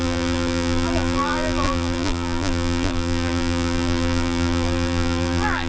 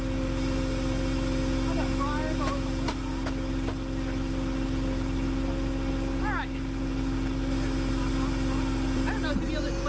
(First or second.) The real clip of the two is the second